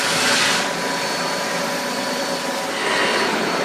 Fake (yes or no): no